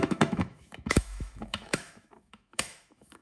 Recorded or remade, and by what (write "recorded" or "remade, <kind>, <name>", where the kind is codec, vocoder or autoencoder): remade, autoencoder, DAC-VAE